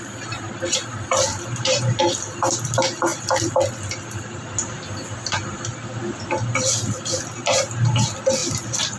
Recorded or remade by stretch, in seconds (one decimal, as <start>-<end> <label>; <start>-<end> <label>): 0.0-1.3 recorded; 1.3-2.0 remade; 2.0-9.0 recorded